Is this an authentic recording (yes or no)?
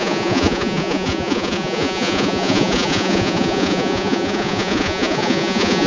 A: no